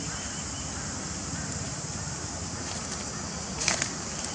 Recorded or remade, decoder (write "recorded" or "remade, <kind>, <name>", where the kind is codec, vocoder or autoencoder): recorded